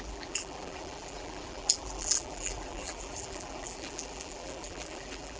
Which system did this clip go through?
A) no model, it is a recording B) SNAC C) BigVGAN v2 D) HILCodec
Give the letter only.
C